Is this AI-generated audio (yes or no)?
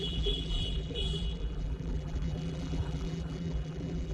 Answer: yes